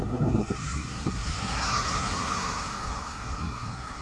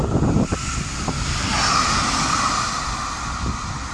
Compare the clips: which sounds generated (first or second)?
first